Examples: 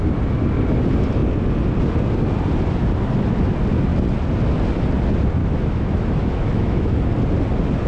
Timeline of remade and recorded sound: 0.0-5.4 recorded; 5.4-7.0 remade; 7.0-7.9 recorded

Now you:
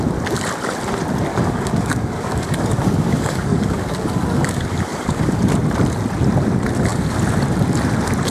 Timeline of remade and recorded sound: 0.0-1.3 recorded; 1.3-5.4 remade; 5.4-8.3 recorded

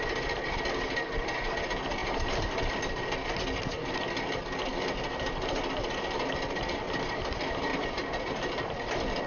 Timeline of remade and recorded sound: 0.0-2.0 recorded; 2.0-2.6 remade; 2.6-7.7 recorded; 7.7-8.9 remade; 8.9-9.3 recorded

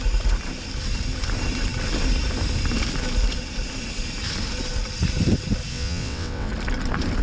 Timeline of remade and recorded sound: 0.0-5.7 recorded; 5.7-6.5 remade; 6.5-7.2 recorded

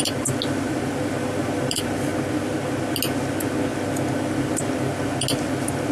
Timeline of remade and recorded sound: 0.0-5.9 recorded

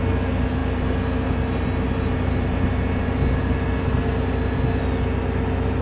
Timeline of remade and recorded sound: 0.0-5.8 recorded

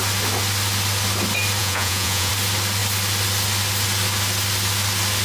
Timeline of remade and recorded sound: 0.0-1.6 recorded; 1.6-2.3 remade; 2.3-5.2 recorded

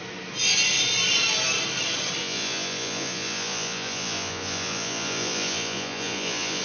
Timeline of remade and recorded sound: 0.0-2.2 recorded; 2.2-6.6 remade